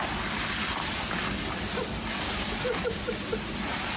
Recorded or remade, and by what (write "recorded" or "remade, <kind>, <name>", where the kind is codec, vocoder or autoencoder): recorded